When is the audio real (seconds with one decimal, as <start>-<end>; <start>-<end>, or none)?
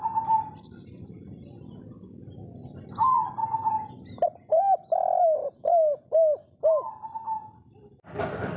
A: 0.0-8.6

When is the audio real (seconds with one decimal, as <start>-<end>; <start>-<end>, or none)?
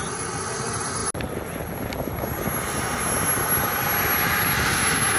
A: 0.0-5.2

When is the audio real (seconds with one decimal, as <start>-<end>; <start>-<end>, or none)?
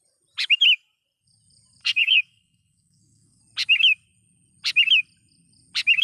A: 0.0-1.8; 3.4-6.0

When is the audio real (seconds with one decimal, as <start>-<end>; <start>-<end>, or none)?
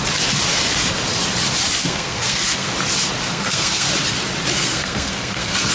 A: 0.0-1.8; 2.7-3.2; 3.9-4.5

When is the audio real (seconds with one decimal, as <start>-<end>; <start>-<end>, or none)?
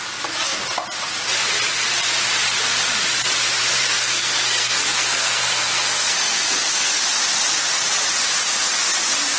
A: 0.0-3.7; 7.0-9.4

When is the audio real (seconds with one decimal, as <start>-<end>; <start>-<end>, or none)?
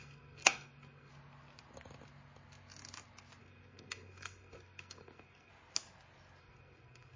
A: 1.1-3.4; 5.5-6.4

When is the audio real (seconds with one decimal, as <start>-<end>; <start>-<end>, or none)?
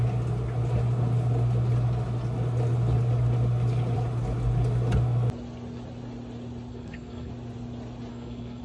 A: 0.0-6.7; 7.3-8.1